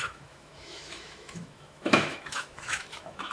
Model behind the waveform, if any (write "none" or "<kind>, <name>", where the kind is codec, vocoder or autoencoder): autoencoder, DAC-VAE